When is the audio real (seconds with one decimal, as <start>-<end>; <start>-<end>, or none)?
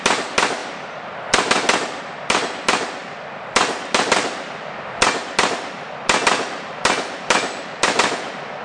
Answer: 0.0-8.6